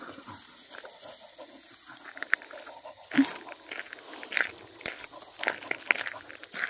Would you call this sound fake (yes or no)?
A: no